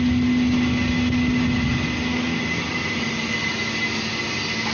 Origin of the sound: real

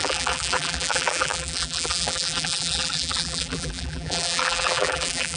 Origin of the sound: fake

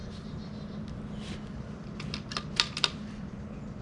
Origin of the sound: real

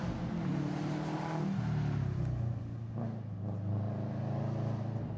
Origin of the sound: real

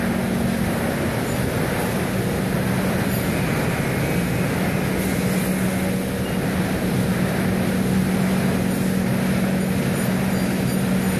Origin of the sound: real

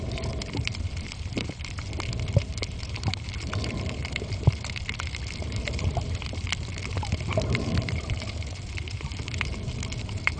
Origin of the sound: fake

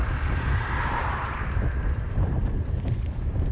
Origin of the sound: fake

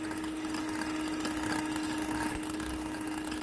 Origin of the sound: real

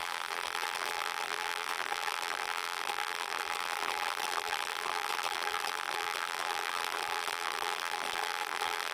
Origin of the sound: fake